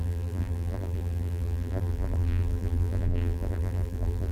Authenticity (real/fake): fake